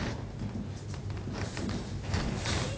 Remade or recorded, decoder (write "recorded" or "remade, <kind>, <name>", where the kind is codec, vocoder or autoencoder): remade, vocoder, BigVGAN v2